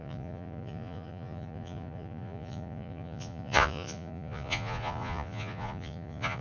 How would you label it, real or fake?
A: fake